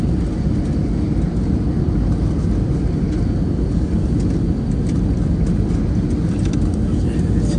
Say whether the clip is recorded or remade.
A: recorded